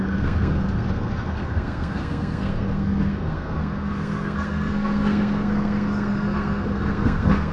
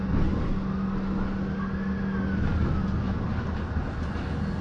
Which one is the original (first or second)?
second